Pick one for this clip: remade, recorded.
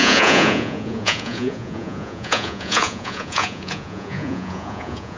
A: remade